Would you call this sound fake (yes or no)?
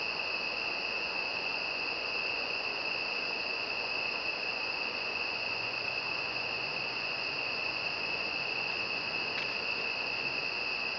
yes